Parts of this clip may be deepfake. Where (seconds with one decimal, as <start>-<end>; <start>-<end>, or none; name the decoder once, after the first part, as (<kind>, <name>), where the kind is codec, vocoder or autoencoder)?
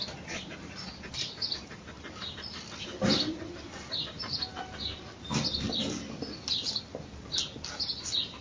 none